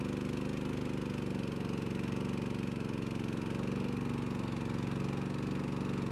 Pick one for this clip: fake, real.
real